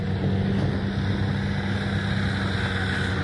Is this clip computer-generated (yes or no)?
no